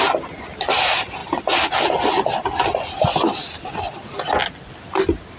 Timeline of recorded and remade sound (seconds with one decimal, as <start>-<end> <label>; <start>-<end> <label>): 0.0-5.4 recorded

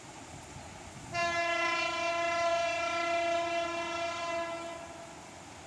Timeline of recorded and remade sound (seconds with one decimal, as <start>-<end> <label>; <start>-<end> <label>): 0.0-5.7 recorded

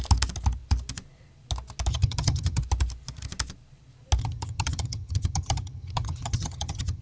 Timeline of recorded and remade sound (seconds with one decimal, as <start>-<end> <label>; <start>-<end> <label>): 0.0-1.9 recorded; 1.9-2.6 remade; 2.6-4.2 recorded; 4.2-7.0 remade

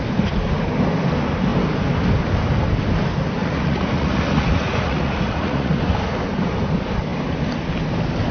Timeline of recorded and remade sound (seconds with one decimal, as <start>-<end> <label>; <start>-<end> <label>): 0.0-3.4 recorded; 3.4-5.8 remade; 5.8-8.3 recorded

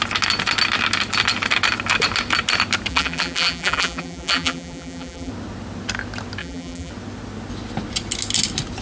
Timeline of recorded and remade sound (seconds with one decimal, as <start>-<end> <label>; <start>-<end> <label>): 0.0-2.9 recorded; 2.9-5.3 remade; 5.3-6.4 recorded; 6.4-6.9 remade; 6.9-8.8 recorded

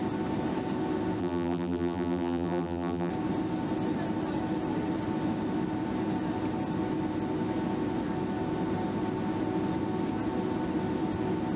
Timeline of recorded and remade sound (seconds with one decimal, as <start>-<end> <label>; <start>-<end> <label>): 0.0-1.2 recorded; 1.2-3.1 remade; 3.1-11.6 recorded

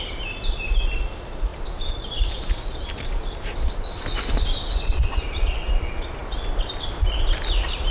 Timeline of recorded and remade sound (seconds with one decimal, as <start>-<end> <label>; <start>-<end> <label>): 0.0-7.9 recorded